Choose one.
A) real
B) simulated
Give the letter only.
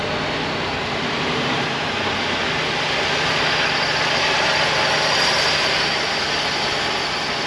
A